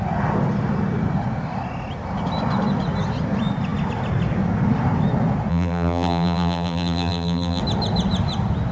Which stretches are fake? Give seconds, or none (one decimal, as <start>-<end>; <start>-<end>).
5.5-7.6